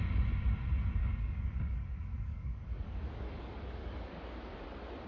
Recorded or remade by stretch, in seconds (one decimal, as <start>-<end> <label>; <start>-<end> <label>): 0.0-1.0 recorded; 1.0-4.1 remade; 4.1-5.1 recorded